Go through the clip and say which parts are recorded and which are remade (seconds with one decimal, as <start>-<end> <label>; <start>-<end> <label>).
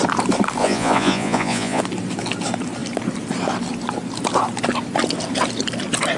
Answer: 0.0-0.6 recorded; 0.6-1.8 remade; 1.8-6.2 recorded